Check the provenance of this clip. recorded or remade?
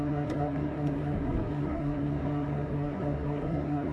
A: remade